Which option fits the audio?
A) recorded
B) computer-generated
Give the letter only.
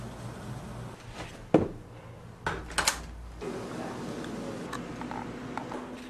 A